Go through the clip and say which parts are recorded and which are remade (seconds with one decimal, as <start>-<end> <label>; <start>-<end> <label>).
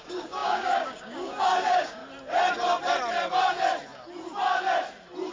0.0-2.0 remade; 2.0-5.3 recorded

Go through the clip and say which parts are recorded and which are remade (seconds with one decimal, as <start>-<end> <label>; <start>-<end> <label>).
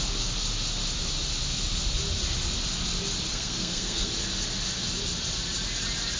0.0-3.3 recorded; 3.3-4.1 remade; 4.1-6.2 recorded